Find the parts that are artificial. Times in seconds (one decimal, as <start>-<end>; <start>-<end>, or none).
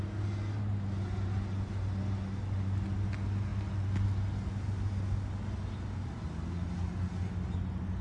none